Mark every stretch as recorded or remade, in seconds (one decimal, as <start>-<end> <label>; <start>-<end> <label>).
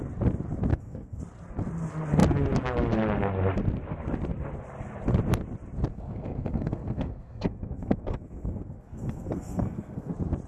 0.0-0.7 recorded; 0.7-1.2 remade; 1.2-5.9 recorded; 5.9-10.1 remade; 10.1-10.5 recorded